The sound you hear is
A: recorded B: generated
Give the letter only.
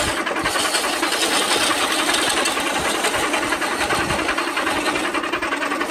A